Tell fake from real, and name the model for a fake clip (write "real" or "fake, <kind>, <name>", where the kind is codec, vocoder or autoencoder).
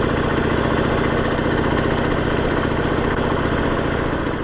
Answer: real